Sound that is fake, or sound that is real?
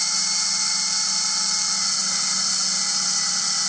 real